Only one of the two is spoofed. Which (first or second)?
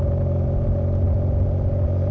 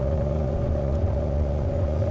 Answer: second